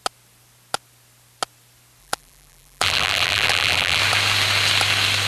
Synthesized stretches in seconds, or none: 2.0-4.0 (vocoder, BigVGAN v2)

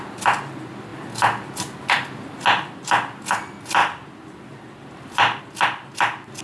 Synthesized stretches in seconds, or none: 3.8-5.4 (vocoder, BigVGAN v2)

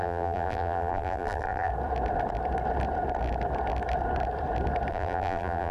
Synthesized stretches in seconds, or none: 0.0-1.7 (vocoder, BigVGAN v2); 4.9-5.7